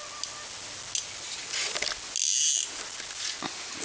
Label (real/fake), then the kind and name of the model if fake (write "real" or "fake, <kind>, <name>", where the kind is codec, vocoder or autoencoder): real